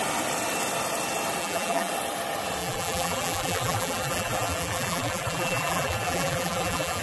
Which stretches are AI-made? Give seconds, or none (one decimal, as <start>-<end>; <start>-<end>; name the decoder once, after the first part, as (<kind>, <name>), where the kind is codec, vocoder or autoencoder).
1.4-1.9 (vocoder, BigVGAN v2); 2.6-7.0